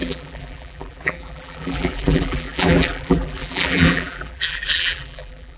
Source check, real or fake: fake